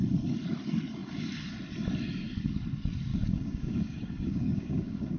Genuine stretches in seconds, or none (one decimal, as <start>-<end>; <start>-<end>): 0.0-3.1